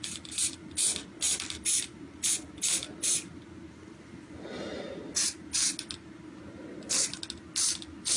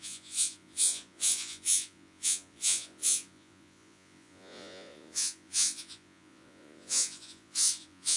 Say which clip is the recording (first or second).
first